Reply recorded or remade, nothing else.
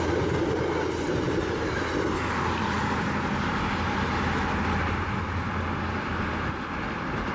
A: recorded